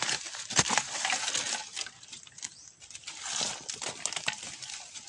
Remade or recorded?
recorded